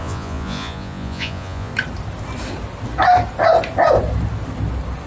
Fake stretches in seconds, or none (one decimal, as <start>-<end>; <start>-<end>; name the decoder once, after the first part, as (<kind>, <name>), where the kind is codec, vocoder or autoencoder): 0.0-1.7 (vocoder, Vocos)